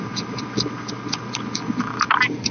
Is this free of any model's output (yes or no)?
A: yes